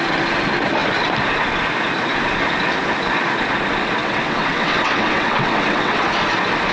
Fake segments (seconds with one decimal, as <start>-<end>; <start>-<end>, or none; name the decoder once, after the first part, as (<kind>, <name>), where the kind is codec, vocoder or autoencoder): 4.0-6.0 (vocoder, WaveNeXt)